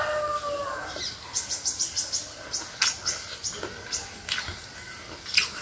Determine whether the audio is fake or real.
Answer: real